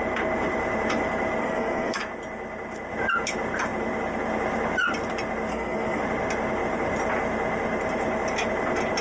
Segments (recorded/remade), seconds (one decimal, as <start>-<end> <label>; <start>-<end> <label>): 0.0-1.4 recorded; 1.4-2.0 remade; 2.0-5.5 recorded; 5.5-6.0 remade; 6.0-9.0 recorded